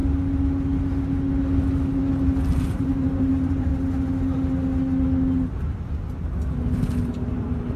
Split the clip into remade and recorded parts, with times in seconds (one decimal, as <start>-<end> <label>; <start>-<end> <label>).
0.0-2.6 recorded; 2.6-3.7 remade; 3.7-7.0 recorded; 7.0-7.8 remade